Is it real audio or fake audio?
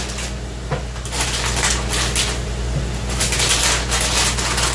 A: real